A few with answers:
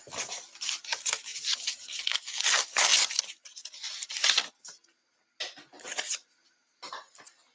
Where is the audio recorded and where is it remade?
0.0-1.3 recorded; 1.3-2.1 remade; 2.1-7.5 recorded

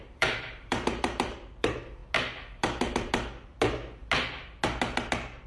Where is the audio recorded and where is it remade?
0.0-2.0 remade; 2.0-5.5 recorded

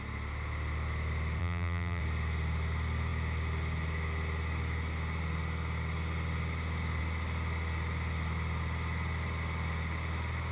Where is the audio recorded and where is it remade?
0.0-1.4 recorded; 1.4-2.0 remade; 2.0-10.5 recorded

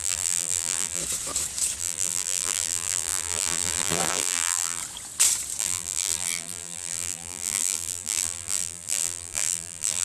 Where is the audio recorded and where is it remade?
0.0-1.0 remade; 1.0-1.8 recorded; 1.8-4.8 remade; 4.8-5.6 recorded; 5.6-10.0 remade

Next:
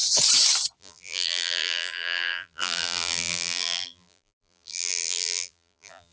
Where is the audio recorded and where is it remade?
0.0-0.8 recorded; 0.8-6.1 remade

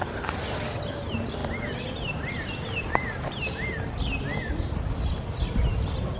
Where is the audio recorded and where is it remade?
0.0-1.4 recorded; 1.4-5.1 remade; 5.1-6.2 recorded

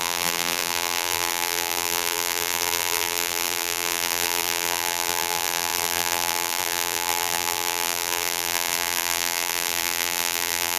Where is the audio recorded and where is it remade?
0.0-10.8 remade